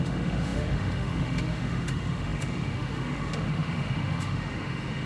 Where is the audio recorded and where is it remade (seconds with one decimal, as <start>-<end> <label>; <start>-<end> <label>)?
0.0-5.1 remade